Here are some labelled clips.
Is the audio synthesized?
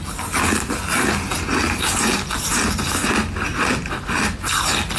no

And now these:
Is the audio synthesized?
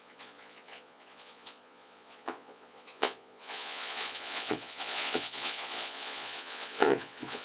yes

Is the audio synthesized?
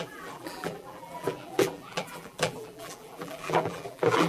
yes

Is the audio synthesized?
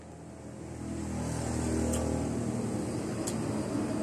no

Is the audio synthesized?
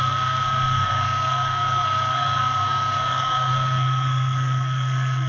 yes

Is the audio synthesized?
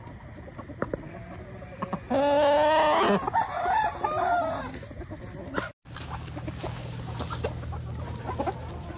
no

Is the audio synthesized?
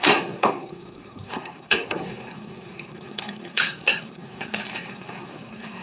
yes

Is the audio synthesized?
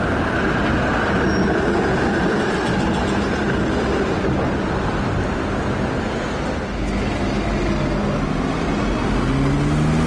no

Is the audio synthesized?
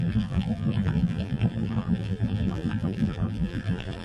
yes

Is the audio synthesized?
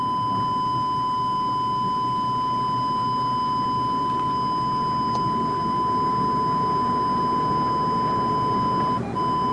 no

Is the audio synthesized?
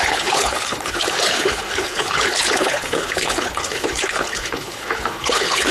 yes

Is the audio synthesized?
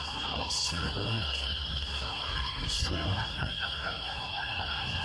yes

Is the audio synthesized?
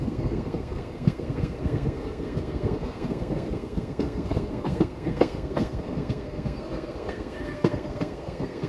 yes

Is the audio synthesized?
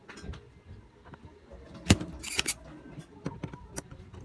no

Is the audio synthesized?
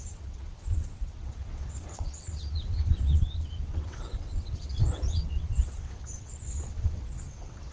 yes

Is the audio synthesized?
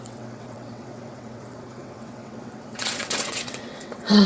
yes